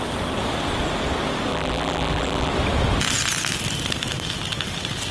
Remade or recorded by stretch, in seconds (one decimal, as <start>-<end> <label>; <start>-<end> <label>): 0.0-1.5 recorded; 1.5-2.5 remade; 2.5-5.1 recorded

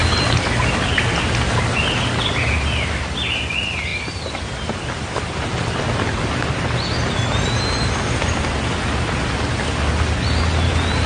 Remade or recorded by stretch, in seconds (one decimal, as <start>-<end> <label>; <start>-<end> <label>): 0.0-1.3 remade; 1.3-3.9 recorded; 3.9-5.5 remade; 5.5-11.1 recorded

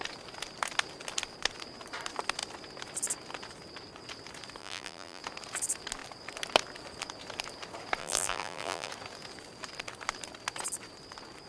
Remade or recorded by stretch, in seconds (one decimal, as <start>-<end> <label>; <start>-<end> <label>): 0.0-4.6 recorded; 4.6-5.2 remade; 5.2-8.0 recorded; 8.0-8.9 remade; 8.9-11.5 recorded

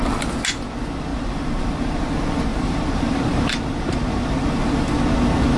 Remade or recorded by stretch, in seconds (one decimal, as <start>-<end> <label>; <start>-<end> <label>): 0.0-1.1 recorded; 1.1-2.1 remade; 2.1-2.5 recorded; 2.5-4.9 remade; 4.9-5.6 recorded